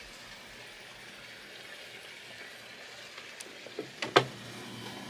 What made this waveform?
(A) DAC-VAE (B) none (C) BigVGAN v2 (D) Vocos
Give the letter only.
B